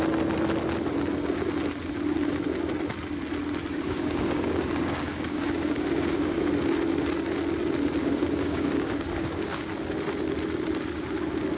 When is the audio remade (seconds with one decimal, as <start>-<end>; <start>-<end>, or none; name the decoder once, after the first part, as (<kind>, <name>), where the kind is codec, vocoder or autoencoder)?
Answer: 3.7-6.5 (codec, DAC); 8.0-9.7